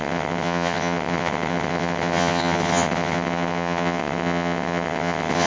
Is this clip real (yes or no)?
no